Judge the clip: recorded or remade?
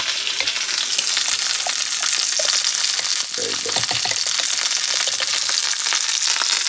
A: recorded